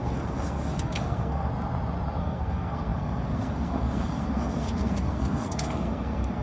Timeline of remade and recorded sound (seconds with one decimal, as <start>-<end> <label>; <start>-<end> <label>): 0.0-1.5 remade; 1.5-2.2 recorded; 2.2-6.4 remade